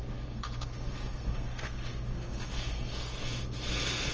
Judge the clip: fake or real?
fake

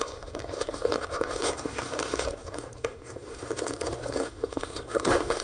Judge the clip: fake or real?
fake